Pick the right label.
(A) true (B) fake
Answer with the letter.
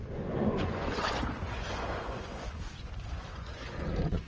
B